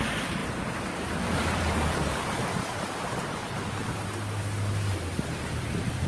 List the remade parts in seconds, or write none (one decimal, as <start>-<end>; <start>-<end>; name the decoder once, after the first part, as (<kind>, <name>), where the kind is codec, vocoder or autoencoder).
0.0-3.8 (vocoder, BigVGAN v2); 5.1-6.1